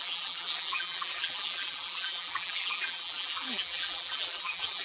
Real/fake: fake